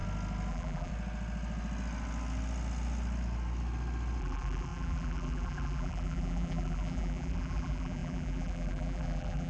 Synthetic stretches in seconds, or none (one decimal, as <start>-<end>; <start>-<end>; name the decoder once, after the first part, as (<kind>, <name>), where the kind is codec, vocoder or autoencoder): 0.5-0.9 (vocoder, BigVGAN v2); 4.2-9.5